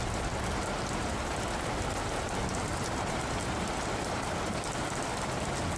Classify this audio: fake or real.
real